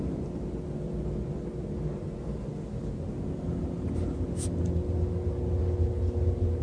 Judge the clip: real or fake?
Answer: real